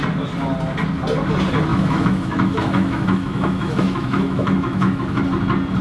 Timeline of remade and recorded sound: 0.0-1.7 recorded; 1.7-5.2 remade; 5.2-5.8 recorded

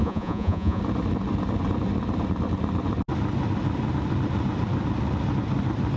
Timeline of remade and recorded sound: 0.0-0.8 remade; 0.8-6.0 recorded

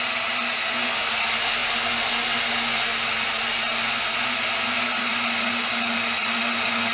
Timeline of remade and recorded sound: 0.0-2.9 recorded; 2.9-3.7 remade; 3.7-5.1 recorded; 5.1-5.6 remade; 5.6-6.9 recorded